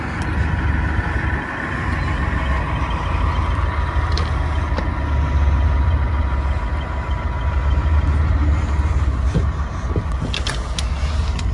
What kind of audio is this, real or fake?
real